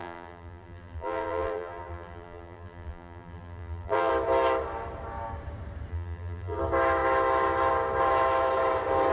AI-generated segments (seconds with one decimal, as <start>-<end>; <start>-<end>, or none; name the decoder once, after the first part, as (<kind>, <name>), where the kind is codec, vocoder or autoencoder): 0.0-4.1 (vocoder, BigVGAN v2); 5.9-6.6

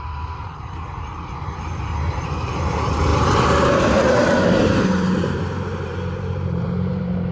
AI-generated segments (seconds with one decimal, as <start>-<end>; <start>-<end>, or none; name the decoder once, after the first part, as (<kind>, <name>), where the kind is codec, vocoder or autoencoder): 0.0-7.3 (vocoder, BigVGAN v2)

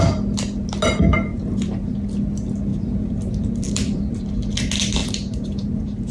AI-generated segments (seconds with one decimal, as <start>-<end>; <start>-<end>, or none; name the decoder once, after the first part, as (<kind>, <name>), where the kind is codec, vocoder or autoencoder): 1.3-1.9 (vocoder, BigVGAN v2); 2.7-4.2; 5.0-6.1

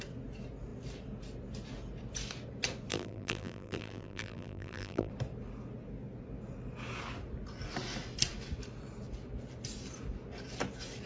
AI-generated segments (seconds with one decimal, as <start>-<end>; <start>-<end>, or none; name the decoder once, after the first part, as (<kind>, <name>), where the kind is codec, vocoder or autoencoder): 2.9-5.1 (vocoder, BigVGAN v2)